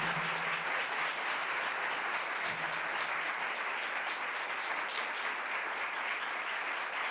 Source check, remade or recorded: recorded